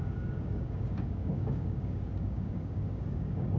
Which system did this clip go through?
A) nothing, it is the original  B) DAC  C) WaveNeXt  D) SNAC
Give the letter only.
B